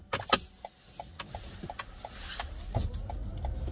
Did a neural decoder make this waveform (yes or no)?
no